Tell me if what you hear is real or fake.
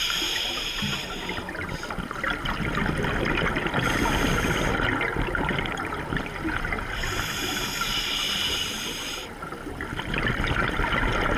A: real